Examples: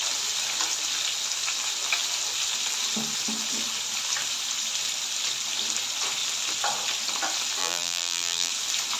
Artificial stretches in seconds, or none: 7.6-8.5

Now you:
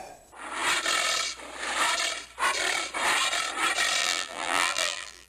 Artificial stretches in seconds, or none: 4.0-5.3

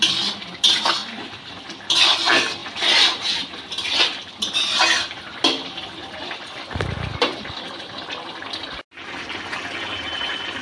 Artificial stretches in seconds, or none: 7.1-8.2

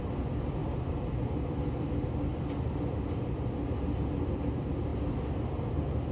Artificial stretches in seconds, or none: 0.6-1.1; 2.3-2.9